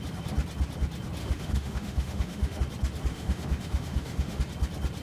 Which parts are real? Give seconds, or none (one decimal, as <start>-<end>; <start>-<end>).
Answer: 0.0-1.2; 2.6-3.1; 4.4-5.0